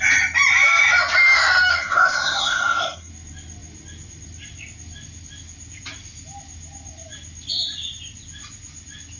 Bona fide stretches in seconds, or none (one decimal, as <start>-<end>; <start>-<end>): 0.0-1.7; 3.1-9.2